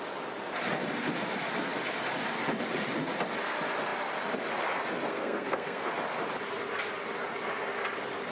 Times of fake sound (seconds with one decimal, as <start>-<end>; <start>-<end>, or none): 5.1-5.9